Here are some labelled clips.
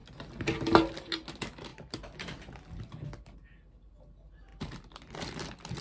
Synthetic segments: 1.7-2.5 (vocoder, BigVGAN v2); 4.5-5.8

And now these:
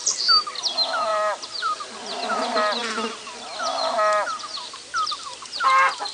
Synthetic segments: 1.1-2.4 (vocoder, BigVGAN v2)

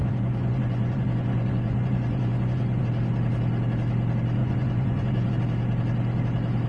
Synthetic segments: 0.0-2.8 (vocoder, Vocos); 4.4-5.3